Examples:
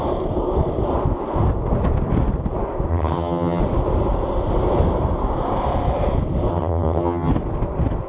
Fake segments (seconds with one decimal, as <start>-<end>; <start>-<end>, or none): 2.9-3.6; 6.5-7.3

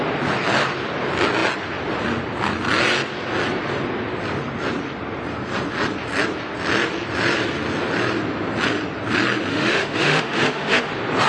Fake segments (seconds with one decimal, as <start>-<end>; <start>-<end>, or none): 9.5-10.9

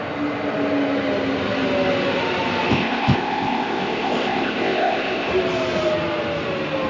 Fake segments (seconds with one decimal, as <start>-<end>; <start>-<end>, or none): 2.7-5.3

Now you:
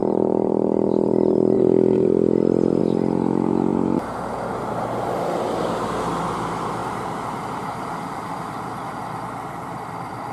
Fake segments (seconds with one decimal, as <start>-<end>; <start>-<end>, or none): 0.0-2.8; 6.8-8.7